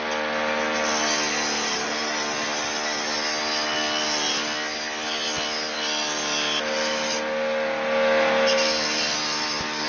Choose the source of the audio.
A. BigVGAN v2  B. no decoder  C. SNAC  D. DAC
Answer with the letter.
B